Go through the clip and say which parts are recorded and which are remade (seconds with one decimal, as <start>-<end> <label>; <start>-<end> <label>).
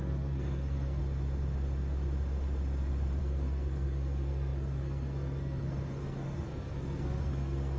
0.0-1.0 remade; 1.0-3.2 recorded; 3.2-7.8 remade